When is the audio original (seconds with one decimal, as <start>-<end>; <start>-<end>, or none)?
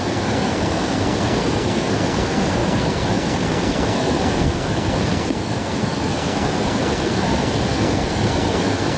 none